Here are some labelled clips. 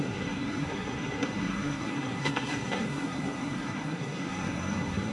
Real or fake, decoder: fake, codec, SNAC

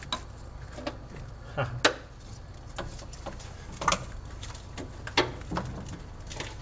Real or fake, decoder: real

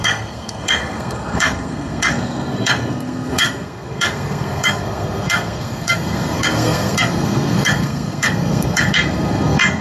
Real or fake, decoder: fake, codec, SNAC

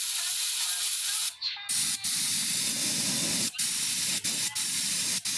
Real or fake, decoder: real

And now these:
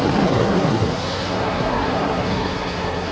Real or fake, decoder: fake, codec, SNAC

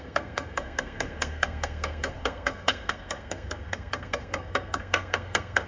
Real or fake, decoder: fake, codec, SNAC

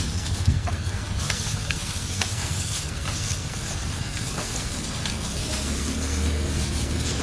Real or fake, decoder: fake, codec, SNAC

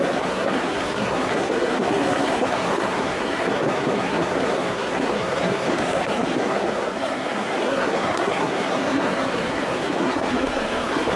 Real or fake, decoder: fake, codec, SNAC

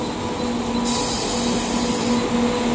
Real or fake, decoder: real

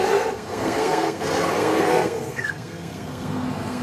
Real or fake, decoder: fake, codec, SNAC